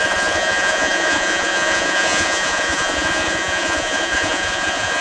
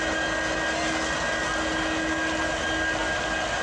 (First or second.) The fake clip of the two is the first